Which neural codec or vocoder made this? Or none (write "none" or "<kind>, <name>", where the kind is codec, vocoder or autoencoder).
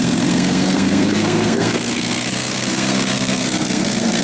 codec, SNAC